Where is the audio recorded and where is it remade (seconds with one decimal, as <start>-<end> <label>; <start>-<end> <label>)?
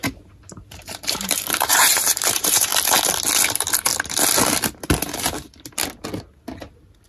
0.0-2.7 remade; 2.7-3.5 recorded; 3.5-3.9 remade; 3.9-7.1 recorded